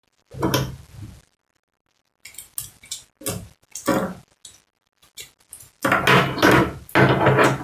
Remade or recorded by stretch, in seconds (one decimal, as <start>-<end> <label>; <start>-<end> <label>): 0.0-7.6 recorded